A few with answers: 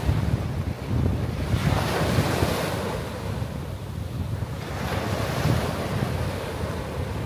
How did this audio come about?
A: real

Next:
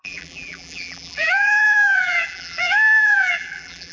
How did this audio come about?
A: fake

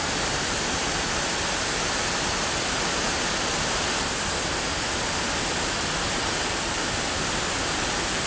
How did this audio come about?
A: fake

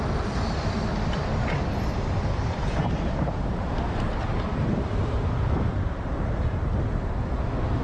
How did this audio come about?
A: fake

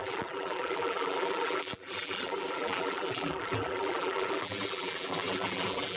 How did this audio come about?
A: fake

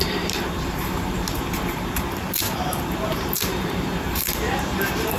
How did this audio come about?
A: fake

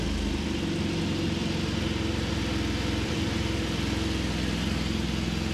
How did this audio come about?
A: real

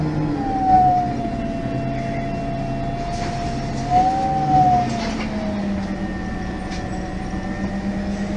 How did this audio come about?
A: real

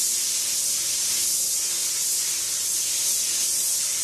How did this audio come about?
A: real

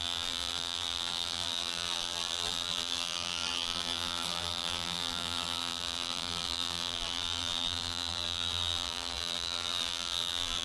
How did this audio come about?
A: fake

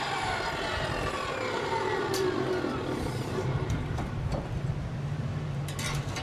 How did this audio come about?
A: fake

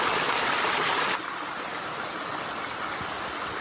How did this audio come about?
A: real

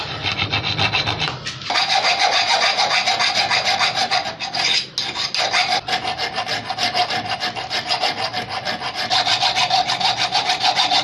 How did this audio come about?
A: real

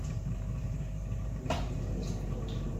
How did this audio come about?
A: fake